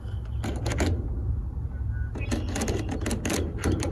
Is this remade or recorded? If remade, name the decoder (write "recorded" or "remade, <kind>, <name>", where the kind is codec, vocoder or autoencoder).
recorded